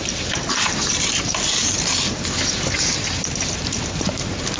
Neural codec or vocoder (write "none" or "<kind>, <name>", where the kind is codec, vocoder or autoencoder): vocoder, BigVGAN v2